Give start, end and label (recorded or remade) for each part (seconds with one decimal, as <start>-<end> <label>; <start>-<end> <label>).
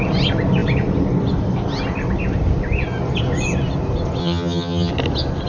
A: 0.0-4.2 recorded; 4.2-4.9 remade; 4.9-5.5 recorded